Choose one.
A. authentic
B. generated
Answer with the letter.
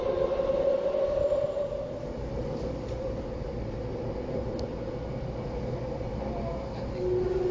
A